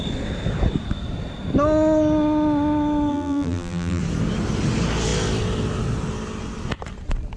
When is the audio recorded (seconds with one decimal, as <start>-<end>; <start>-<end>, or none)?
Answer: 0.0-3.1; 4.0-7.4